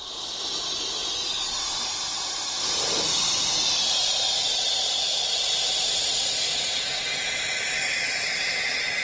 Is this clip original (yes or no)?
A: yes